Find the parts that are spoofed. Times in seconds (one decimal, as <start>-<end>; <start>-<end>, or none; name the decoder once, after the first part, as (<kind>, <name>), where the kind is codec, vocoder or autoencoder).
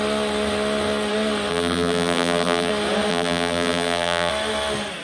1.5-2.7 (vocoder, BigVGAN v2); 3.1-4.3